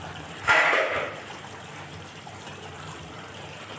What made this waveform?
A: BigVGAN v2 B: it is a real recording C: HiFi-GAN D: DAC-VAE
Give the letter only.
A